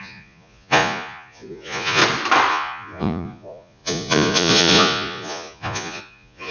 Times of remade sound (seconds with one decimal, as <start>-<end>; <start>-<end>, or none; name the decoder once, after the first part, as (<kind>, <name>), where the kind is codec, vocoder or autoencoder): 0.0-2.0 (vocoder, Vocos); 2.5-6.5